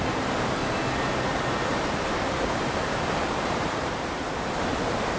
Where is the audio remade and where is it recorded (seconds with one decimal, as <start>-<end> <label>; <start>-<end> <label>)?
0.0-0.6 remade; 0.6-1.3 recorded; 1.3-5.2 remade